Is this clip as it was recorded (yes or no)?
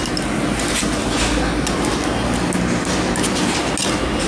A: yes